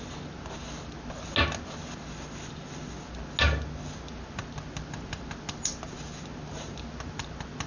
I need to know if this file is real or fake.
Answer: real